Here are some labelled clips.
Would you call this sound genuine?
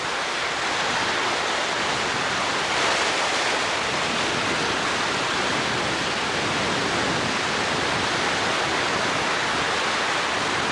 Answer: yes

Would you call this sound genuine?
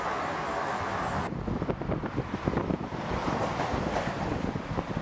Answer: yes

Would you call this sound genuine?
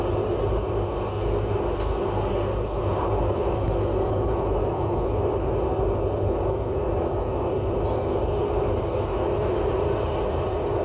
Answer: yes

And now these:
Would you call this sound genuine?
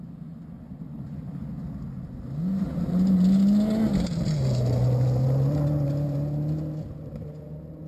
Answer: yes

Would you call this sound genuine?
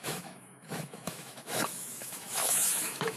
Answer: no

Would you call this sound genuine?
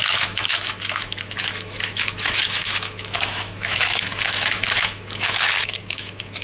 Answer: no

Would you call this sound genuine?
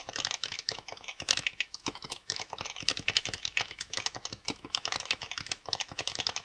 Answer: no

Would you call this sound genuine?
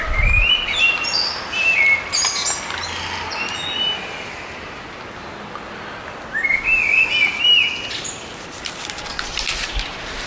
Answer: yes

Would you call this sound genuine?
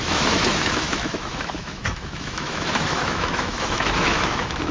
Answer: no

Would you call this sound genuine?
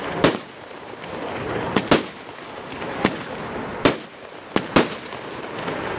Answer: yes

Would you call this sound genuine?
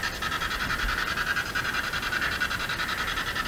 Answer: yes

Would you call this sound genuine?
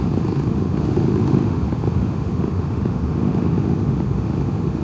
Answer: no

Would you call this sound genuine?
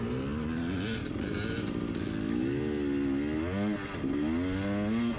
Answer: yes